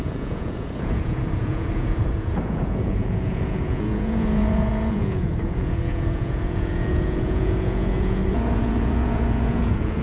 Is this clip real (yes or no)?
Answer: no